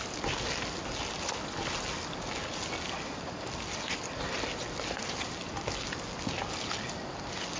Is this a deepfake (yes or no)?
no